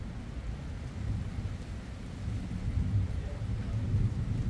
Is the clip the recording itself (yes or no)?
yes